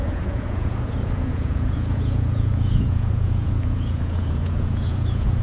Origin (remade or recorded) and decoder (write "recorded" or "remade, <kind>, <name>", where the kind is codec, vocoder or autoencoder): remade, vocoder, Vocos